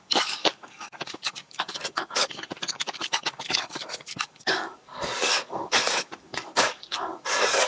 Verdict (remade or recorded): remade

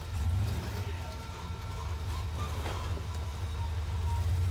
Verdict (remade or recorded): recorded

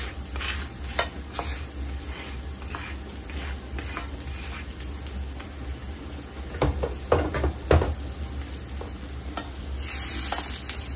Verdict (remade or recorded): recorded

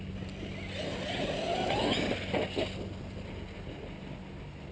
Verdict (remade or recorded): recorded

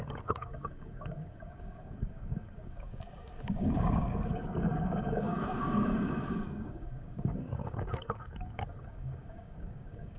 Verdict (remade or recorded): remade